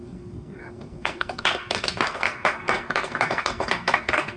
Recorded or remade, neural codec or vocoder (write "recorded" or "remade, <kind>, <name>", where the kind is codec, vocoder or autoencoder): remade, codec, SNAC